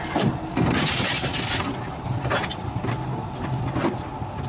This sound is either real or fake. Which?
real